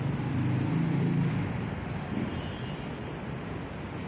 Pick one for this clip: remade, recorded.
recorded